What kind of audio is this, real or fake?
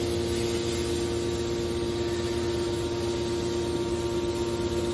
real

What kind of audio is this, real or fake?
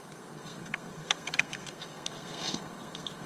fake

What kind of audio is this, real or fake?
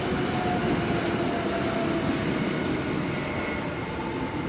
real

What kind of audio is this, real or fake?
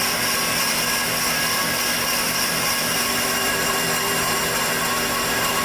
real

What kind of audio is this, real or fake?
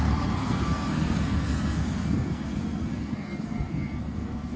fake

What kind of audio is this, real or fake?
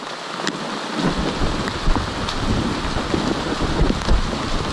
real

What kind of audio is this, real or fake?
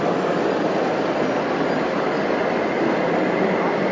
real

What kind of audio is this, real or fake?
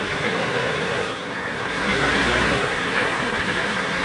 fake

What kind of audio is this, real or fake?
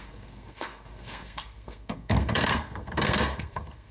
fake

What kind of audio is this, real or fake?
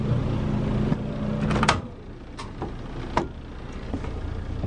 real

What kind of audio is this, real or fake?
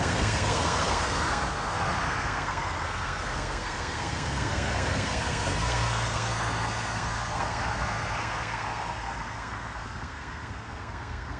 fake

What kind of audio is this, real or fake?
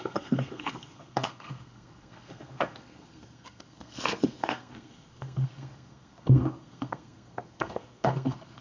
fake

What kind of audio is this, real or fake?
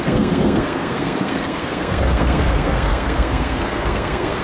fake